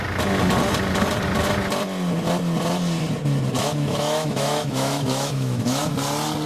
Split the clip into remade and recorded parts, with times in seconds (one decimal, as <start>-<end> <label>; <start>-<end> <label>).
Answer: 0.0-3.6 recorded; 3.6-5.9 remade; 5.9-6.5 recorded